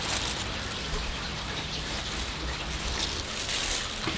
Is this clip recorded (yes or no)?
yes